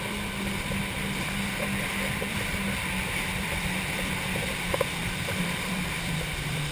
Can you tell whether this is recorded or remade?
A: remade